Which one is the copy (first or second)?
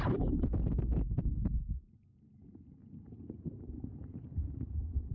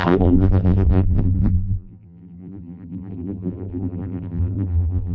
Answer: second